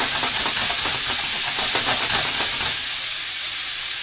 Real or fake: real